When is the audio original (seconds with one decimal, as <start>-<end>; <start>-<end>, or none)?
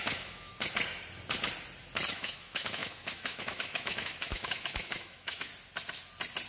0.5-2.1; 5.5-6.5